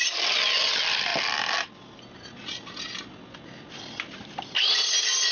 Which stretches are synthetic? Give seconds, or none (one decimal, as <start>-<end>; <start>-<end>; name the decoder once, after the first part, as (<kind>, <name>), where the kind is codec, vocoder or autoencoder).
0.0-1.1 (vocoder, BigVGAN v2); 4.3-5.3